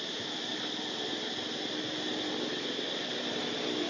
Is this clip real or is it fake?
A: real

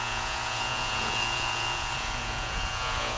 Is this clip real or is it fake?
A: fake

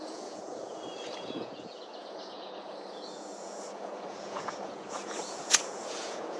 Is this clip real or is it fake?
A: fake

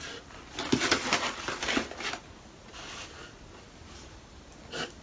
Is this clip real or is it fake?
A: real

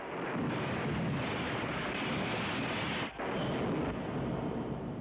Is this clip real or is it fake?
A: real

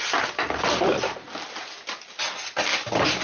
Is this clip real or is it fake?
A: real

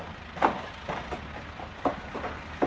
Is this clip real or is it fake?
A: real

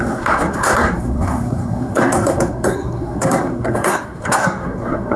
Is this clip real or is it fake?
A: fake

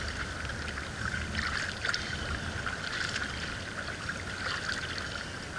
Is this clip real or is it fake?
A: real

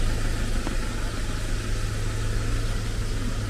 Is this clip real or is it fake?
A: real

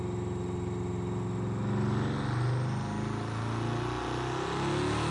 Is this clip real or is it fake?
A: real